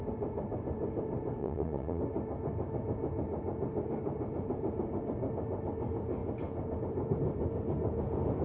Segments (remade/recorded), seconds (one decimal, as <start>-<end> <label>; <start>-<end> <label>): 0.0-1.4 recorded; 1.4-2.0 remade; 2.0-8.4 recorded